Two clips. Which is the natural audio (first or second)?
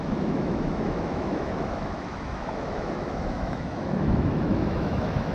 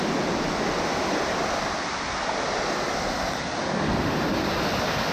second